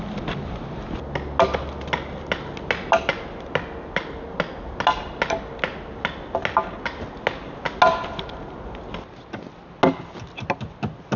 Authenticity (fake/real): real